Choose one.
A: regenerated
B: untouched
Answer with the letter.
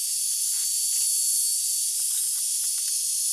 B